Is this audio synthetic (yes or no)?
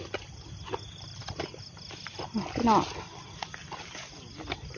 no